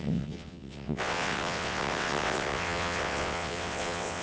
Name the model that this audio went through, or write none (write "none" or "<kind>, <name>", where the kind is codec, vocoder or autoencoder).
vocoder, WaveNeXt